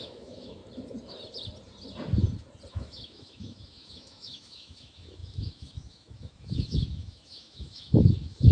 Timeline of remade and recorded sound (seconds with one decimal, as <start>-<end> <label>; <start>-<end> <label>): 0.0-0.6 remade; 0.6-2.7 recorded; 2.7-8.5 remade